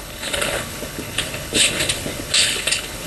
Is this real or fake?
fake